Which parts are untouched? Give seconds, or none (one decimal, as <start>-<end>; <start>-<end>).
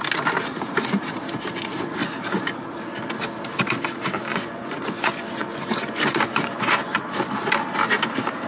0.0-4.3; 7.0-8.5